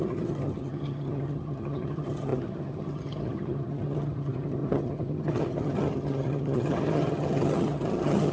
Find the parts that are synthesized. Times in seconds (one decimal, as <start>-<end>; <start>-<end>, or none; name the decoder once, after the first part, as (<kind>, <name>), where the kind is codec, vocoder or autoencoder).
0.0-8.3 (vocoder, HiFi-GAN)